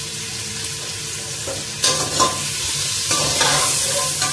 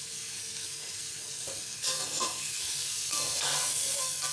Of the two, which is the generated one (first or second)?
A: second